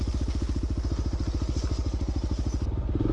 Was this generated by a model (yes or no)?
no